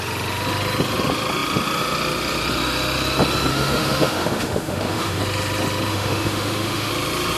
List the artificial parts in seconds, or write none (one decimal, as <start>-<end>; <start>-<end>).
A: 3.5-5.2; 5.9-6.9